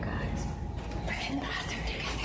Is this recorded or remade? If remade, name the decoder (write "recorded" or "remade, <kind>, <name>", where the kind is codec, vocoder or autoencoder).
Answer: recorded